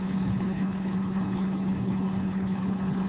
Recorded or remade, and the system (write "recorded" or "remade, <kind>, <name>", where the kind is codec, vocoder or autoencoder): remade, codec, HILCodec